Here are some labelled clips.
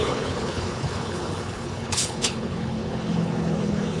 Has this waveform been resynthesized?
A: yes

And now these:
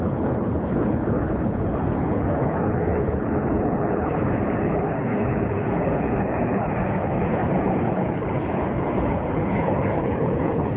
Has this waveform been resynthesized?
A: yes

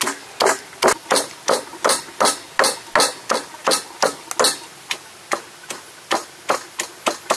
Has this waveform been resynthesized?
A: no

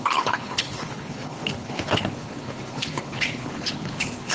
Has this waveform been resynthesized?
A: yes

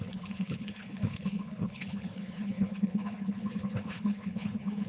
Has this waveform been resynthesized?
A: yes